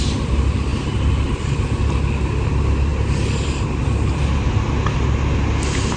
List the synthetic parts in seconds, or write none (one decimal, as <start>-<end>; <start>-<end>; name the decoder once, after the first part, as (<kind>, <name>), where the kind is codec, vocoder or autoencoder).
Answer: none